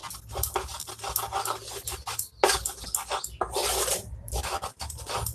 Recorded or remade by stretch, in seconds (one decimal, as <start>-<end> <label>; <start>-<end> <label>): 0.0-3.6 recorded; 3.6-4.7 remade; 4.7-5.3 recorded